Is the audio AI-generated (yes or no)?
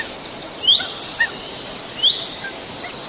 no